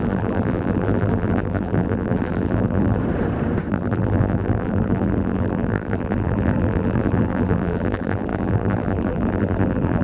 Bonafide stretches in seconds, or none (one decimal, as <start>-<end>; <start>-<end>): 3.0-3.7